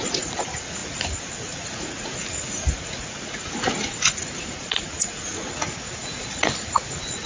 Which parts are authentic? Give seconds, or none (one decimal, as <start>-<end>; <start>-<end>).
none